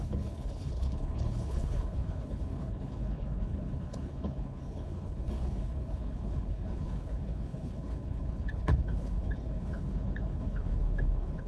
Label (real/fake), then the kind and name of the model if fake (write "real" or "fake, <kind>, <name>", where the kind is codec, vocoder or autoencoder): fake, codec, HILCodec